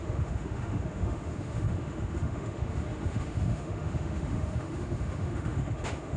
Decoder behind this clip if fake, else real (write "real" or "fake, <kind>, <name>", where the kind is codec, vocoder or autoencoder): fake, autoencoder, DAC-VAE